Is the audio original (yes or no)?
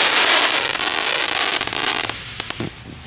no